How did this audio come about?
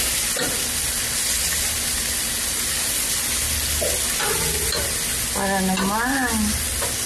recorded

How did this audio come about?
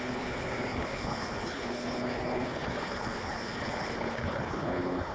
remade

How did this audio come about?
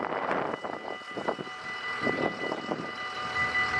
recorded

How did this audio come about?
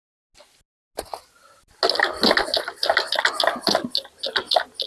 recorded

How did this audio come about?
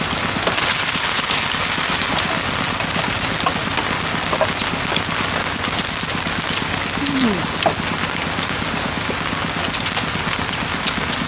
recorded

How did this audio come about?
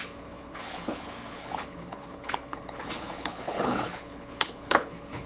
remade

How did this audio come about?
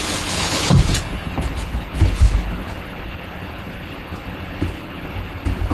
remade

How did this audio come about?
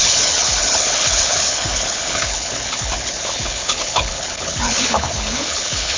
remade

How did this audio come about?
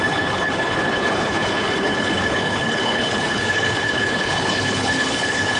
remade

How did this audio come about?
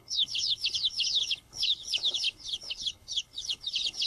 remade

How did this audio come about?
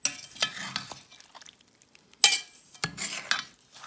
recorded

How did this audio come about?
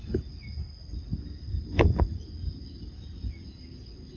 recorded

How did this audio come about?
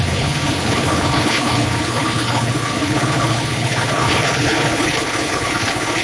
remade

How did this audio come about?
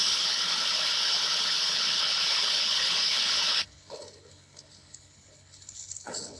remade